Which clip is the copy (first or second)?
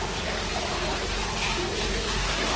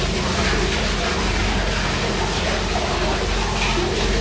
first